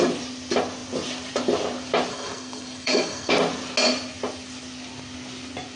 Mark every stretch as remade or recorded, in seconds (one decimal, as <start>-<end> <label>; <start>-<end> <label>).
0.0-2.1 recorded; 2.1-3.3 remade; 3.3-5.8 recorded